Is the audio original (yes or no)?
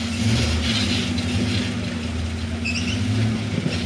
yes